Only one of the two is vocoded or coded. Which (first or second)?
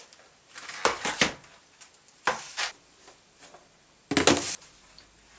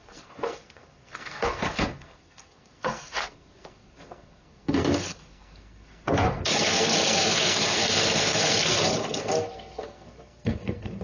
second